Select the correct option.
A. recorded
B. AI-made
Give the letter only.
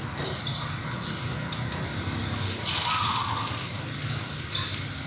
A